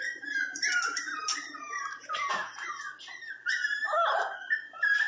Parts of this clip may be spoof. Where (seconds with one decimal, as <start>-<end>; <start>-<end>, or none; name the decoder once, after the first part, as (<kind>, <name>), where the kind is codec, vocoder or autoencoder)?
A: 0.0-2.5 (vocoder, BigVGAN v2); 3.2-3.8